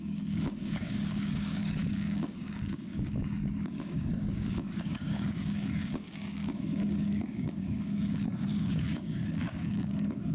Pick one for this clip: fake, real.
fake